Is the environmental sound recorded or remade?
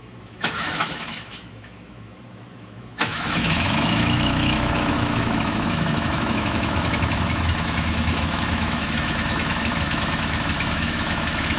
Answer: remade